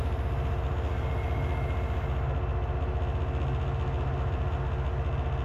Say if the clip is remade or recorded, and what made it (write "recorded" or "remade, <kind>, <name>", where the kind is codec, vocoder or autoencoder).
recorded